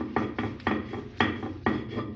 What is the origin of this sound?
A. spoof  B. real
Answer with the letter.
B